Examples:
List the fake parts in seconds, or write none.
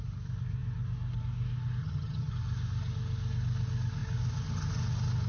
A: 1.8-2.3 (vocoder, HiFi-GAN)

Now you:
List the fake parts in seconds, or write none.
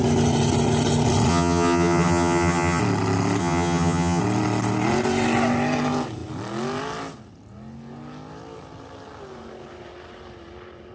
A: 1.3-2.8 (vocoder, HiFi-GAN); 3.4-4.2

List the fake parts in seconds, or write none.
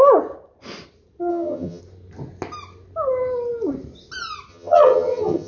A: 1.3-1.8 (vocoder, HiFi-GAN); 4.5-5.5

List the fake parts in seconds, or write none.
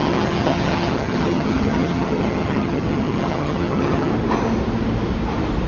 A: 0.0-4.1 (vocoder, HiFi-GAN)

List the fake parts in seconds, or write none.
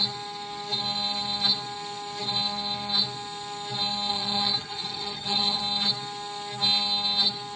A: 4.1-5.6 (vocoder, HiFi-GAN)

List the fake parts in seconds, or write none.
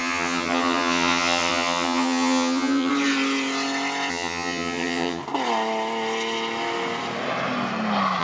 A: 0.0-2.9 (vocoder, HiFi-GAN); 4.1-5.2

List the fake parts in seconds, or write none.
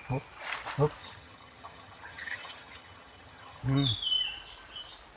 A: 1.0-3.6 (vocoder, HiFi-GAN)